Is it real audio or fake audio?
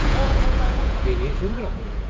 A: fake